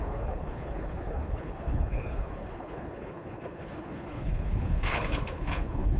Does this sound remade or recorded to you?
remade